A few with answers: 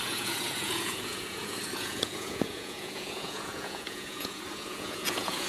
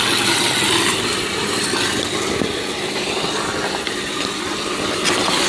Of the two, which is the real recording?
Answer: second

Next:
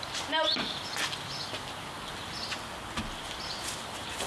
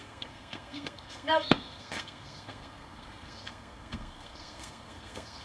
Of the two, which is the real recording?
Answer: first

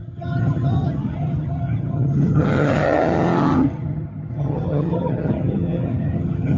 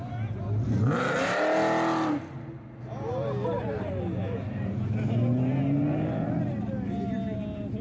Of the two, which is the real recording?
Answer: second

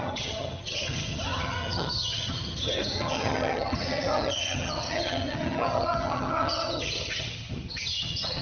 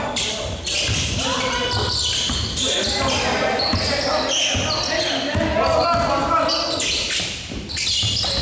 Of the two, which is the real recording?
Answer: second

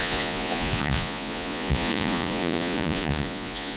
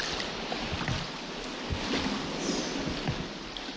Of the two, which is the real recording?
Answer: second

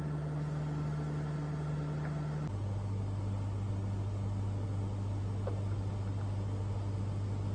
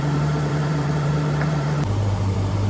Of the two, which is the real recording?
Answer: first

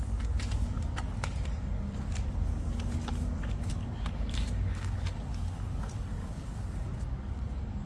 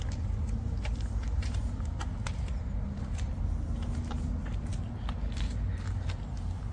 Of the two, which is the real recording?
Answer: second